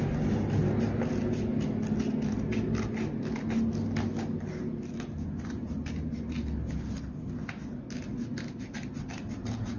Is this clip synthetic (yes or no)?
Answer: no